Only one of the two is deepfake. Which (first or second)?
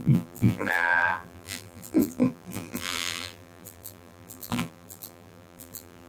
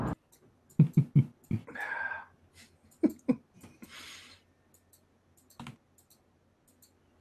first